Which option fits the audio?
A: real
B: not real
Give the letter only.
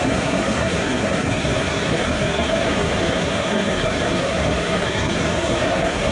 B